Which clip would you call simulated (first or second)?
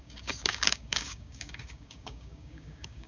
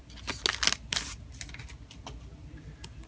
first